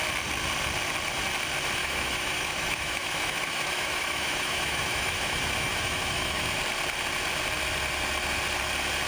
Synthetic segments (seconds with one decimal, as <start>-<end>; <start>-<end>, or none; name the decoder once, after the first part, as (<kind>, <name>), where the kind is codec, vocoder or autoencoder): 1.8-6.6 (autoencoder, DAC-VAE)